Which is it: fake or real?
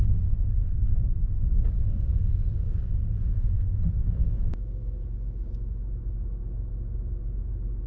real